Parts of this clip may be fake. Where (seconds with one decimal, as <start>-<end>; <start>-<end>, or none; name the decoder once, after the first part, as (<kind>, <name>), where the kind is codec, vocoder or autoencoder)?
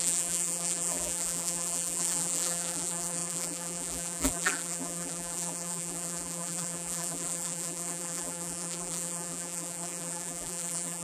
0.0-11.0 (vocoder, BigVGAN v2)